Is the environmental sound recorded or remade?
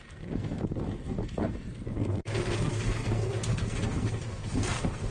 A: remade